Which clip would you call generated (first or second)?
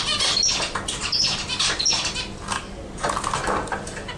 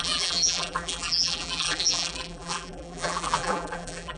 second